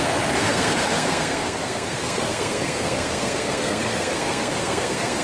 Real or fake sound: fake